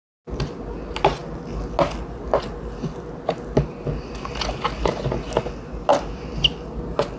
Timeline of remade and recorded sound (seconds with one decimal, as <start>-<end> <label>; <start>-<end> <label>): 0.0-7.2 recorded